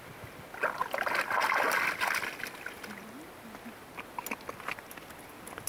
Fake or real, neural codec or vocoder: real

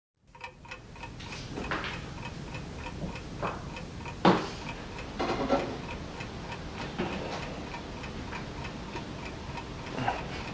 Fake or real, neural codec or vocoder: real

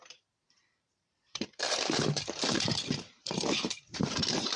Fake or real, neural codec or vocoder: fake, vocoder, BigVGAN v2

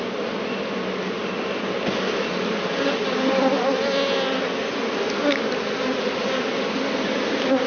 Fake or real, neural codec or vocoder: real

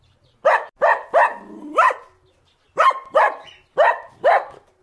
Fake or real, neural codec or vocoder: real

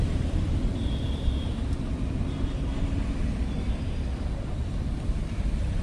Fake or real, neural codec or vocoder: fake, vocoder, BigVGAN v2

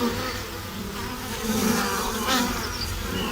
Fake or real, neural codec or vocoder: real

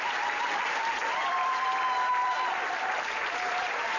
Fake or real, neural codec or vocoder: fake, vocoder, BigVGAN v2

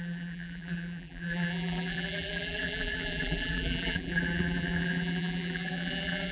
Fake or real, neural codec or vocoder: fake, vocoder, BigVGAN v2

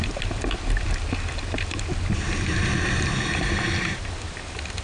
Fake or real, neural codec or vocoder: real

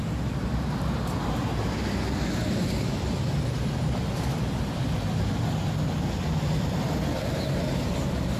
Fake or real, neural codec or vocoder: real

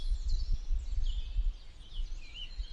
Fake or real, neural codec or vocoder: real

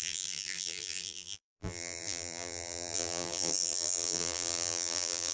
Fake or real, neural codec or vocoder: fake, vocoder, BigVGAN v2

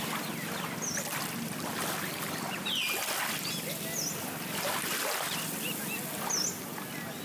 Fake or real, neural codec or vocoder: real